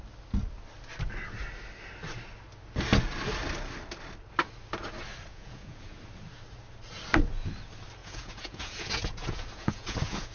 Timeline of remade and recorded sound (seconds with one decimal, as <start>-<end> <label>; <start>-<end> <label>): 0.0-5.3 recorded; 5.3-6.0 remade; 6.0-8.0 recorded; 8.0-10.3 remade